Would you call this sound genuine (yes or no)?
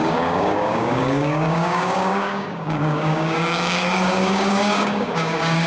no